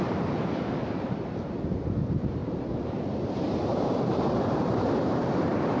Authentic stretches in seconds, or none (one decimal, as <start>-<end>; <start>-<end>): none